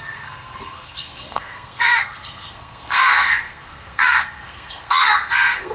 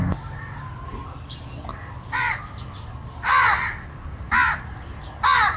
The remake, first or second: first